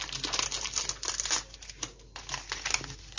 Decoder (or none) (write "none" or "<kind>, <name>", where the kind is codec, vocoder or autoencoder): none